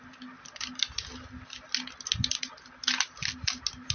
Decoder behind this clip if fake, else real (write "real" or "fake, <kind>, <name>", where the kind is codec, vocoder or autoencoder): real